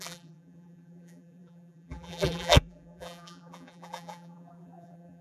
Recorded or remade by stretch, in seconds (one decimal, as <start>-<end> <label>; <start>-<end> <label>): 0.0-5.2 remade